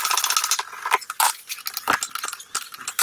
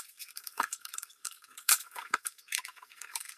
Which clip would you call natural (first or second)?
first